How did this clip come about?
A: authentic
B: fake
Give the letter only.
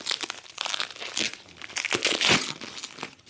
A